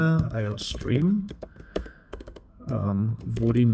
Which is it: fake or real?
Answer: fake